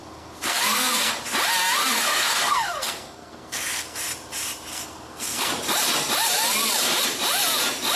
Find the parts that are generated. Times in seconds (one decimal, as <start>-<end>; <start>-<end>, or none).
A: 0.0-1.1; 1.8-4.0; 4.7-5.5